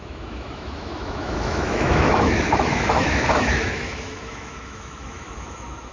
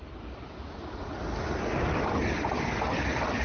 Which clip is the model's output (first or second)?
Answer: first